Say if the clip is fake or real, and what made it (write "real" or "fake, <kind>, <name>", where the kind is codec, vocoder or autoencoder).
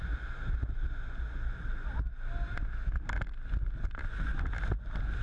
real